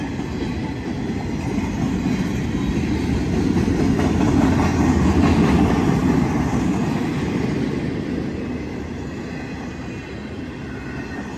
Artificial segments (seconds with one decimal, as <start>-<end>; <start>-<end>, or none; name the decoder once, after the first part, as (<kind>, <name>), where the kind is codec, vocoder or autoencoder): none